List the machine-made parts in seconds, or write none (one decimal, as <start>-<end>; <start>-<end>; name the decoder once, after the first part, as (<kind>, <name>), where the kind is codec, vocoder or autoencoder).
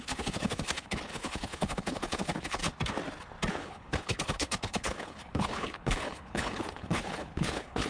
0.0-2.6 (codec, HILCodec); 3.5-7.9